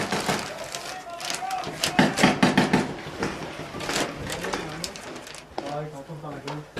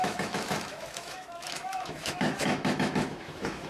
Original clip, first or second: first